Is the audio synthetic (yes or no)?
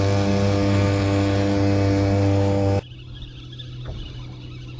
no